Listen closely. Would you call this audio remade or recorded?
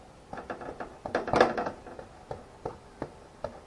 recorded